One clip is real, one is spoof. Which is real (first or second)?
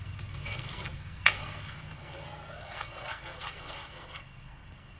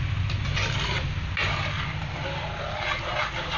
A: second